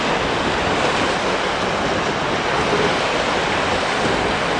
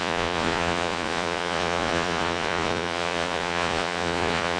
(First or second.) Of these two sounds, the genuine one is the first